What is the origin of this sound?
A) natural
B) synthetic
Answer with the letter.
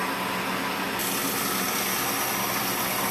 A